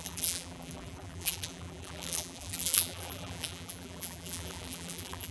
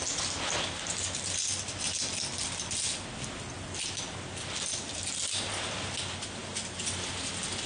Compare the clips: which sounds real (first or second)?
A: second